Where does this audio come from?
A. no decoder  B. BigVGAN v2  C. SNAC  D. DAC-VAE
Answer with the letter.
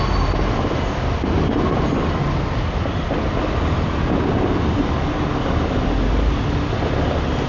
A